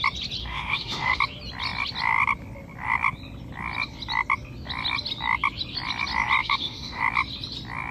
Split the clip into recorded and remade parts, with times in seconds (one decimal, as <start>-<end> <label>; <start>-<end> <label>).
0.0-0.4 recorded; 0.4-1.2 remade; 1.2-6.4 recorded; 6.4-7.0 remade; 7.0-7.9 recorded